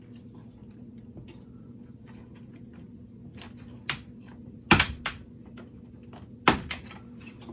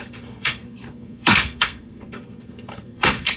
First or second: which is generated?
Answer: second